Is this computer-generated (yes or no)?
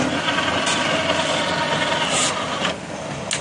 no